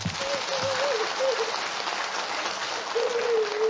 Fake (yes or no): no